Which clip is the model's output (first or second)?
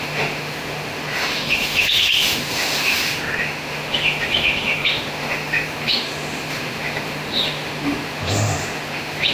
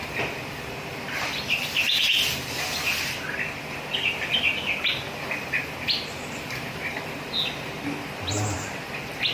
first